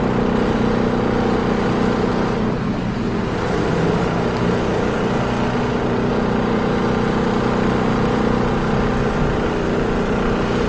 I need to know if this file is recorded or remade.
recorded